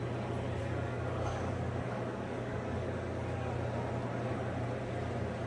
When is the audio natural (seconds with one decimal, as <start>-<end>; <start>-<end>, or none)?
0.0-0.6; 3.5-5.5